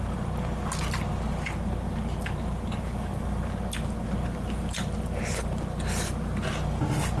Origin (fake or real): real